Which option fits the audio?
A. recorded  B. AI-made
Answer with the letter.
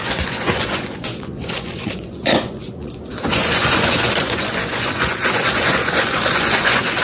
B